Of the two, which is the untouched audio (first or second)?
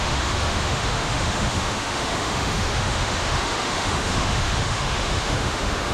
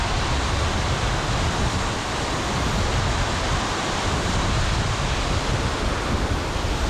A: second